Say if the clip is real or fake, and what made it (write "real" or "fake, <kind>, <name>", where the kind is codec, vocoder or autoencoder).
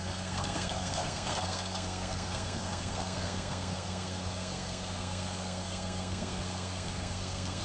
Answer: fake, codec, SNAC